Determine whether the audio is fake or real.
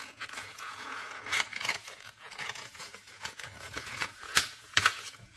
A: fake